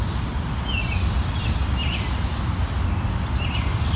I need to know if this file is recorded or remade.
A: recorded